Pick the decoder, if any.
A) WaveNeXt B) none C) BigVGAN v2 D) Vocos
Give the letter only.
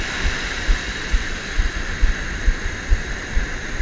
C